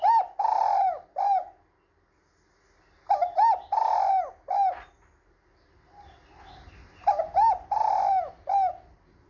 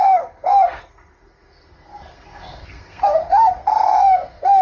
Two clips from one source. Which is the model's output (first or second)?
second